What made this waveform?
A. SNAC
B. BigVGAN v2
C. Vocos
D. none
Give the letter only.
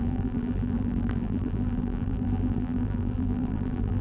B